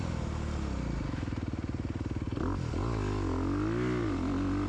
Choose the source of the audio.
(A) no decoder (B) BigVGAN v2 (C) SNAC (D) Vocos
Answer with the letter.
A